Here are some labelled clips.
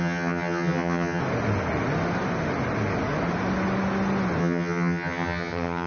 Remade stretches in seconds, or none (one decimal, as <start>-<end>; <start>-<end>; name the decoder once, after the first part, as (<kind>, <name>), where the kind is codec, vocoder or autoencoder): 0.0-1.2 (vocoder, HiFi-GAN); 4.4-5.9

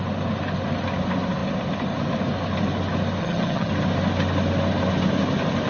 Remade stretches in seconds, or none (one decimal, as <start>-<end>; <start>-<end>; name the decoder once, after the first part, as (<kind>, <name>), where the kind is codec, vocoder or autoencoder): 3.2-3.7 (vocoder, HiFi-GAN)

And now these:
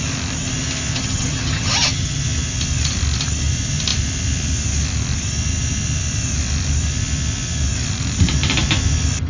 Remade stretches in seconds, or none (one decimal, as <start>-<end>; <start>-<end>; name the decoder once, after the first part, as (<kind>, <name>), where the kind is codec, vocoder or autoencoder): 0.9-2.2 (vocoder, HiFi-GAN)

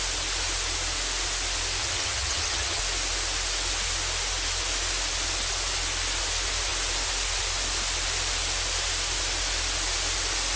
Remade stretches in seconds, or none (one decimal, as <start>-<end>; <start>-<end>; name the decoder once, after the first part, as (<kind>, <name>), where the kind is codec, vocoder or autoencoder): 1.8-2.8 (vocoder, HiFi-GAN)

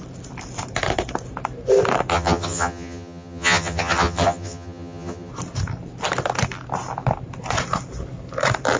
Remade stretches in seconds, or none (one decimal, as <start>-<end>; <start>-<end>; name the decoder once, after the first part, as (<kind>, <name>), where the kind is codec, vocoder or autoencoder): 2.1-5.3 (vocoder, HiFi-GAN)

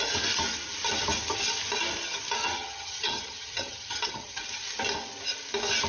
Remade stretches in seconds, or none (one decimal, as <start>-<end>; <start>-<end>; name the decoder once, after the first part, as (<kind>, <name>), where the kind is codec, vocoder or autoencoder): 2.4-4.4 (vocoder, HiFi-GAN)

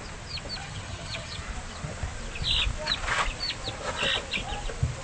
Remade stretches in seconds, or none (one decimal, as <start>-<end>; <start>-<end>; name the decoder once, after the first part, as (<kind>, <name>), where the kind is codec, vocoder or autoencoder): 0.6-1.4 (vocoder, HiFi-GAN)